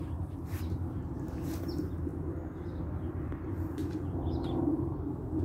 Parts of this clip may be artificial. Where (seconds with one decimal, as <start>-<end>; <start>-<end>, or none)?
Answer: 0.0-5.4

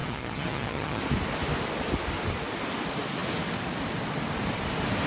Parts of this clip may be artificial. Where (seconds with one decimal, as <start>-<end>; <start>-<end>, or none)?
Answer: 0.0-1.0

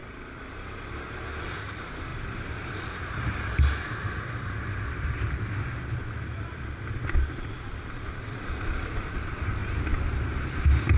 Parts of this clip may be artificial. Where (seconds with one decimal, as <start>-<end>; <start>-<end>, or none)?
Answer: none